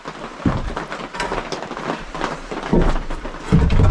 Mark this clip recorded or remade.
recorded